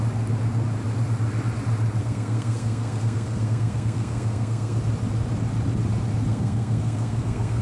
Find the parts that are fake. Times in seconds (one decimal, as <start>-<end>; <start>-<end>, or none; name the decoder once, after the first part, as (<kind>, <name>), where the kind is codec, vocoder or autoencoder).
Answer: 2.0-4.8 (codec, SNAC); 6.3-7.6